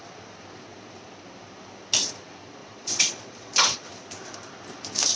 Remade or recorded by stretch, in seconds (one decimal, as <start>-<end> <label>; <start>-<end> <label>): 0.0-2.6 recorded; 2.6-3.9 remade; 3.9-5.2 recorded